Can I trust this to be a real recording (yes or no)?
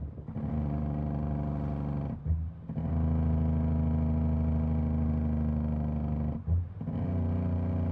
yes